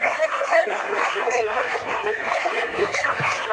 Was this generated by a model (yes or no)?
yes